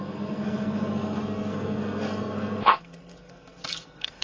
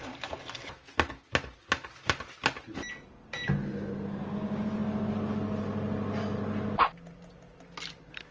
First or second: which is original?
second